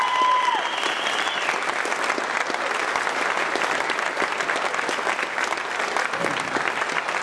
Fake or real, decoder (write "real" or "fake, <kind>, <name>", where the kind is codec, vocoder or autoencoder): real